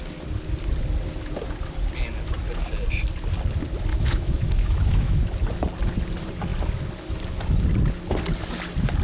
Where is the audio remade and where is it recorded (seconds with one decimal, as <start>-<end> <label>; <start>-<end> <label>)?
0.0-3.9 recorded; 3.9-5.2 remade; 5.2-9.0 recorded